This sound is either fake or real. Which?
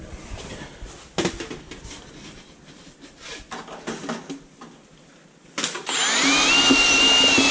real